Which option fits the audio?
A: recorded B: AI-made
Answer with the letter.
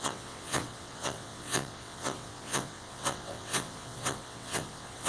B